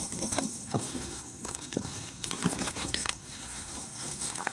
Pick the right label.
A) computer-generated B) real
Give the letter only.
A